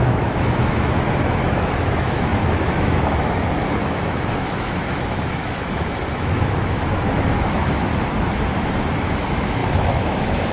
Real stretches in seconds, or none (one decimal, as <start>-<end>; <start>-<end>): 7.9-9.0